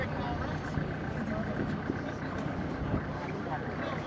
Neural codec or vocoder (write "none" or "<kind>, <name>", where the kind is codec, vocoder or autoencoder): none